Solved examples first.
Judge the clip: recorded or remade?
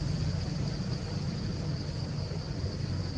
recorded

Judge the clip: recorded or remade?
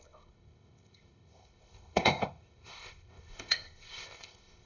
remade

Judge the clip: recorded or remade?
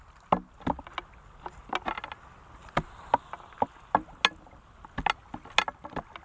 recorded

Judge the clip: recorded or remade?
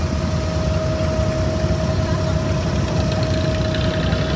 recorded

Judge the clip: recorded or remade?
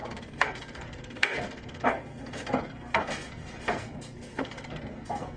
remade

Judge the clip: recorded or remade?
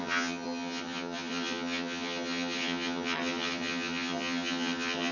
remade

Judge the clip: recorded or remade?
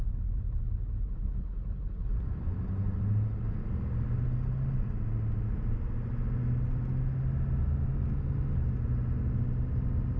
recorded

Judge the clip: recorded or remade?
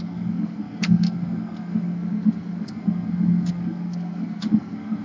remade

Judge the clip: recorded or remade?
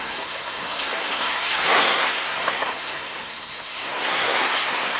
remade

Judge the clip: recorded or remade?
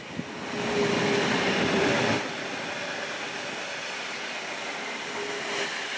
recorded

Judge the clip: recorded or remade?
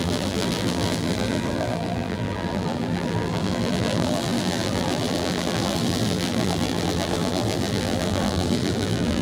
remade